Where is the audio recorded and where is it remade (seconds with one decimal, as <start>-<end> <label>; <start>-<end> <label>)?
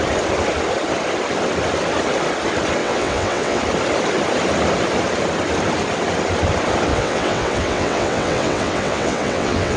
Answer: 0.0-2.8 recorded; 2.8-3.6 remade; 3.6-6.9 recorded; 6.9-9.8 remade